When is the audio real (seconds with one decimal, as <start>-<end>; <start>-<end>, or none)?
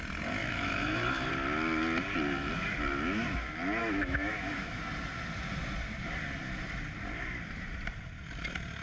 0.0-0.4; 1.3-3.8; 4.8-8.8